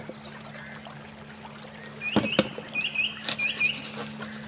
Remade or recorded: recorded